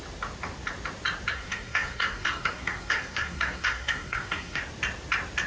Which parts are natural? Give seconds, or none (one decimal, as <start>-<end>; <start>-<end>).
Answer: 0.0-1.3; 4.6-5.5